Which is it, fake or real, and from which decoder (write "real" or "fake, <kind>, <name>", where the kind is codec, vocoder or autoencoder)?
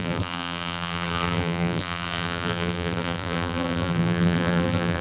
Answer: fake, vocoder, BigVGAN v2